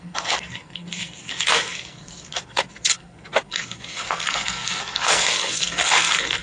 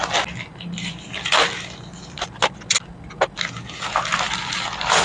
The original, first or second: second